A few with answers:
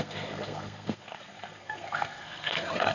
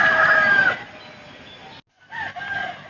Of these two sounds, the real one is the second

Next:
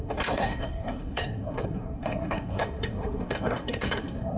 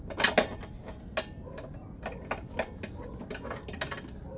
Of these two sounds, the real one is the second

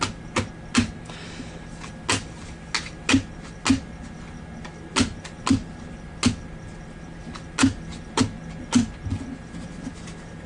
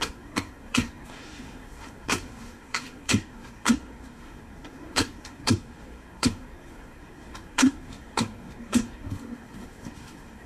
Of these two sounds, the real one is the first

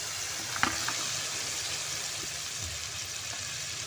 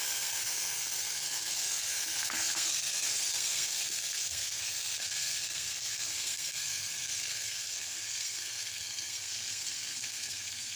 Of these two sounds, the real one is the first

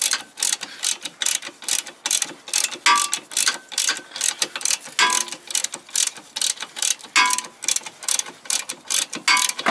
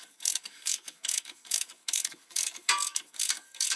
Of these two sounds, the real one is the first